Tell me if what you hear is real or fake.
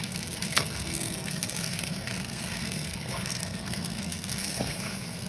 fake